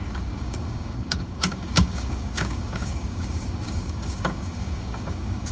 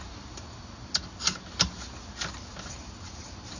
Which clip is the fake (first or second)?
first